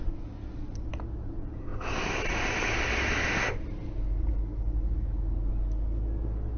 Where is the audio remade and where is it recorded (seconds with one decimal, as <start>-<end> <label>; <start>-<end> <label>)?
0.0-6.6 recorded